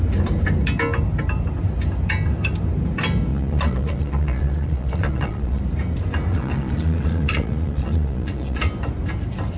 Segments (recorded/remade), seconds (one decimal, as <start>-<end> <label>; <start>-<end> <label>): 0.0-3.3 recorded; 3.3-5.6 remade; 5.6-6.3 recorded; 6.3-8.6 remade; 8.6-9.6 recorded